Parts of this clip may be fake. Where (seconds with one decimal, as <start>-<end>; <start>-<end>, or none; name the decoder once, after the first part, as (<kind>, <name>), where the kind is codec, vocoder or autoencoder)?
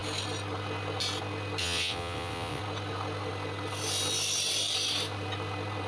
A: 1.6-2.6 (vocoder, WaveNeXt)